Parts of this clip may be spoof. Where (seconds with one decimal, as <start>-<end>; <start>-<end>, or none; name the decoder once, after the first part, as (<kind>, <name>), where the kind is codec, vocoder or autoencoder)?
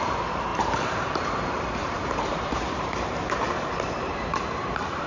0.5-1.3 (vocoder, BigVGAN v2); 1.8-4.1